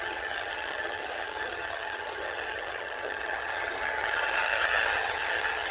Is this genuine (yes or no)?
no